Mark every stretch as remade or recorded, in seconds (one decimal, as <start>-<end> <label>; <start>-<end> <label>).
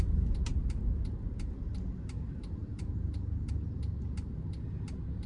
0.0-2.6 recorded; 2.6-3.5 remade; 3.5-5.3 recorded